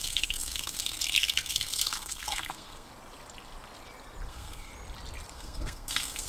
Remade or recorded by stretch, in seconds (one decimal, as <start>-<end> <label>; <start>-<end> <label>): 0.0-2.9 remade; 2.9-4.3 recorded; 4.3-4.7 remade; 4.7-5.3 recorded; 5.3-6.3 remade